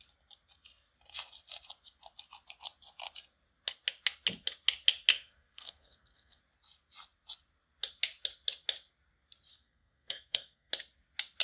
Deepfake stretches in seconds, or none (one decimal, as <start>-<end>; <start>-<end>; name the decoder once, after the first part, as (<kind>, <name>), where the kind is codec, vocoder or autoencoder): 5.1-6.4 (codec, SNAC); 9.5-10.7